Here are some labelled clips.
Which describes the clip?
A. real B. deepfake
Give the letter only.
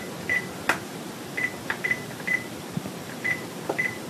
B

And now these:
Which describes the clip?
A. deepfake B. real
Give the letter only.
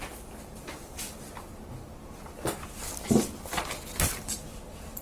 B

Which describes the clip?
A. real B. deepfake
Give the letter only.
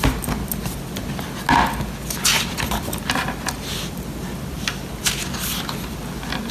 A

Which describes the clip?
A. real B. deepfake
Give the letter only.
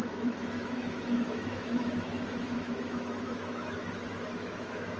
B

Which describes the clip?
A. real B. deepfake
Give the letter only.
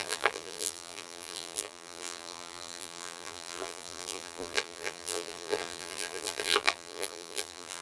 B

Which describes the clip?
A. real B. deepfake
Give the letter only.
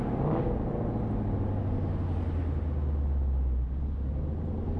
A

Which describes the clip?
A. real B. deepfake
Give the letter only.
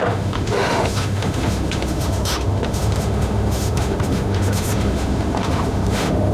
B